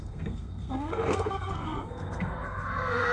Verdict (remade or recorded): remade